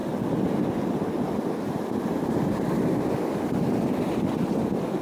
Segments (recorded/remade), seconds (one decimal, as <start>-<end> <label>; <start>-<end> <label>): 0.0-5.0 recorded